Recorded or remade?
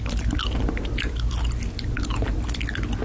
recorded